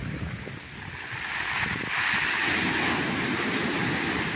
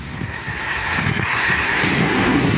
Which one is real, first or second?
first